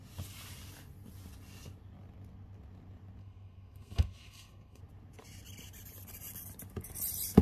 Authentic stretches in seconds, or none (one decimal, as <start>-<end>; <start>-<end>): 0.0-3.2; 4.8-7.4